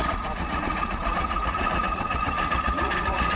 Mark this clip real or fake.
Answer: fake